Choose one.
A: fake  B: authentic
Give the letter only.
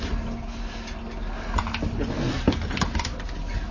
B